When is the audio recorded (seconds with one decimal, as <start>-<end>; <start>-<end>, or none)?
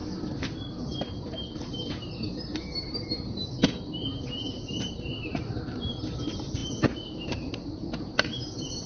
0.0-0.7